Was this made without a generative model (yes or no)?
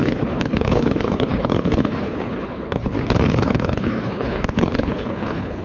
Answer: no